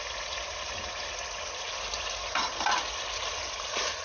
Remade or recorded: recorded